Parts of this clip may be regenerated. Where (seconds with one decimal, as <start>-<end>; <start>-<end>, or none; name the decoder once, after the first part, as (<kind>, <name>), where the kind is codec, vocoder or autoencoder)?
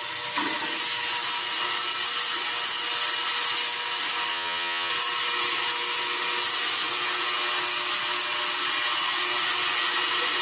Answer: 4.3-4.9 (vocoder, HiFi-GAN)